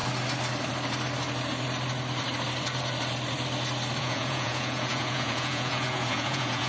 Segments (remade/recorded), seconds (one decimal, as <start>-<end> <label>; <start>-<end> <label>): 0.0-4.0 recorded; 4.0-6.7 remade